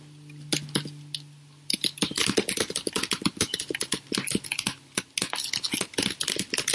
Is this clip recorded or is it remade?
recorded